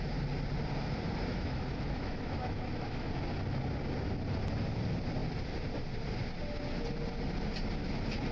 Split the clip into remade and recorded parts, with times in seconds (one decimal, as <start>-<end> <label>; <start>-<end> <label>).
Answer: 0.0-1.3 recorded; 1.3-3.1 remade; 3.1-8.3 recorded